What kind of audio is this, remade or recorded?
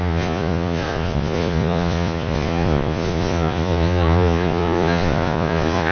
remade